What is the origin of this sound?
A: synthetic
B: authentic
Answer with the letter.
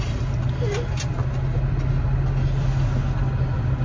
B